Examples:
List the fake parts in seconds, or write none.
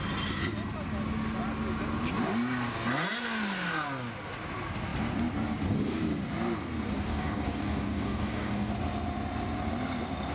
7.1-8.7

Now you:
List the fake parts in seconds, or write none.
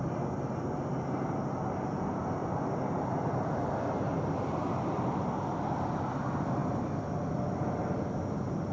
none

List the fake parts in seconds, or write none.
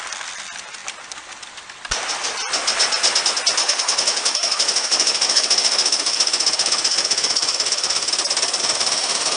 3.6-8.1; 8.6-9.4